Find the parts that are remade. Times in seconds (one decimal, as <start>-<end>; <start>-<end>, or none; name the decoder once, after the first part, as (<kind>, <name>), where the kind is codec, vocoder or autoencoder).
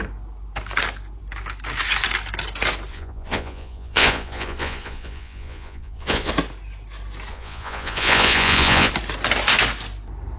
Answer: 2.9-6.3 (vocoder, Vocos); 7.3-8.9